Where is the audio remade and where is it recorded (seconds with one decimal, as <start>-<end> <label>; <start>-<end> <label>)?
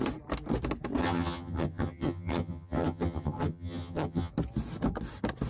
0.0-1.0 recorded; 1.0-4.3 remade; 4.3-5.5 recorded